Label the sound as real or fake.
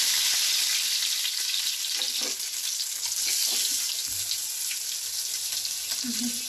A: real